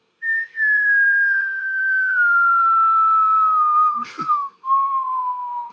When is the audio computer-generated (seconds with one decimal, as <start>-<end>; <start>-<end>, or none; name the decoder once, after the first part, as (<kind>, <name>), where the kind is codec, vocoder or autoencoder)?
0.0-5.7 (codec, SNAC)